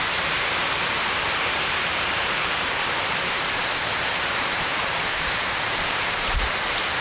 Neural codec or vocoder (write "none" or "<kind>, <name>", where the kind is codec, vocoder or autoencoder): vocoder, BigVGAN v2